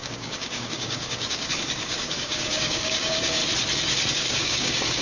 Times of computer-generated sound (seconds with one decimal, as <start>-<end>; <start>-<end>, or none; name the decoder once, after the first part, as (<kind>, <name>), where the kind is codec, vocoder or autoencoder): 0.0-3.4 (codec, DAC); 4.1-5.0